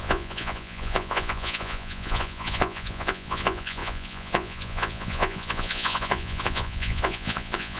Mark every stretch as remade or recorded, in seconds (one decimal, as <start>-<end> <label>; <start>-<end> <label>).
0.0-7.8 remade